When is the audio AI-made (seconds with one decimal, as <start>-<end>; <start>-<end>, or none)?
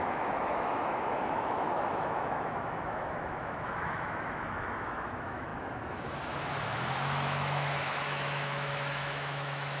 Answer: 0.0-9.8